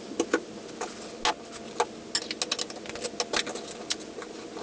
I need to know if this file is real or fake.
real